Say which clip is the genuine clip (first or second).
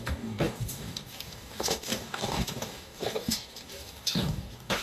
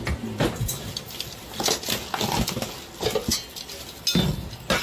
second